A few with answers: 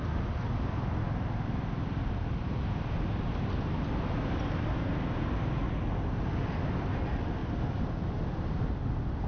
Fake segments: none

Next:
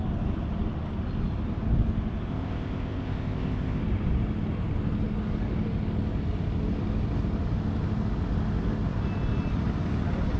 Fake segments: 2.3-3.8 (codec, ZipCodec)

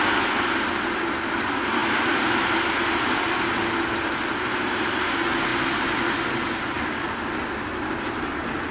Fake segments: none

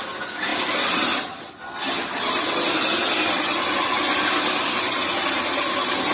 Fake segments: none